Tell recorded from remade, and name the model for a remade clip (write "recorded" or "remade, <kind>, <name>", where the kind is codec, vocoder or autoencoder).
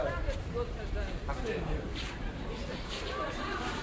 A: recorded